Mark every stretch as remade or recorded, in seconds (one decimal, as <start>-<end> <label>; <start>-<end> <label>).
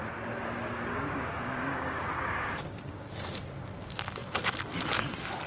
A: 0.0-0.6 recorded; 0.6-3.2 remade; 3.2-5.5 recorded